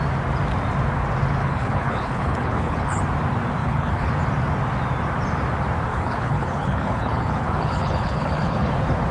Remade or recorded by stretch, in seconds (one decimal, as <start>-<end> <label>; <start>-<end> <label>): 0.0-1.4 recorded; 1.4-3.0 remade; 3.0-3.6 recorded; 3.6-4.1 remade; 4.1-5.9 recorded; 5.9-8.7 remade; 8.7-9.1 recorded